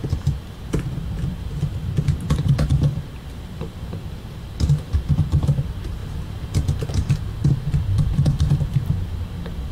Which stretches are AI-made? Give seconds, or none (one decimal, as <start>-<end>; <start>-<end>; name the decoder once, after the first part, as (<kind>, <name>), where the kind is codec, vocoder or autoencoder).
0.0-6.0 (vocoder, BigVGAN v2); 7.1-9.7